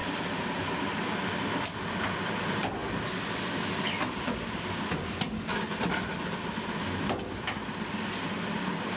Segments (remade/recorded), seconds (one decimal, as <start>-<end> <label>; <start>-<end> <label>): 0.0-9.0 recorded